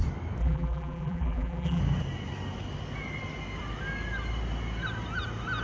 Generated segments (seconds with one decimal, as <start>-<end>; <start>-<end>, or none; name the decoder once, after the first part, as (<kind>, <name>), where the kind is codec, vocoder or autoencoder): 0.4-1.8 (vocoder, BigVGAN v2)